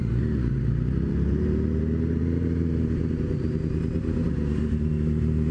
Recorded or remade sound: remade